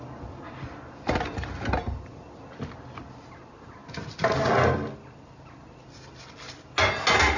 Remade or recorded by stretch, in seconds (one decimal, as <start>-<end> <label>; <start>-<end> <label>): 0.0-7.4 recorded